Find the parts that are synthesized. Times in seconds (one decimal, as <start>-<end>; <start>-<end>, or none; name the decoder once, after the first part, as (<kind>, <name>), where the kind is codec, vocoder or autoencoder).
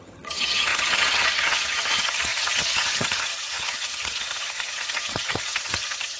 0.0-6.2 (vocoder, HiFi-GAN)